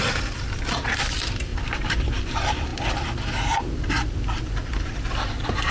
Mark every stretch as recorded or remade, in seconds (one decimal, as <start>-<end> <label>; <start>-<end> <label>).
0.0-2.7 remade; 2.7-3.6 recorded; 3.6-5.7 remade